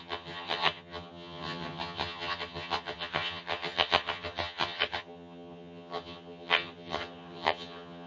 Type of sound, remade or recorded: remade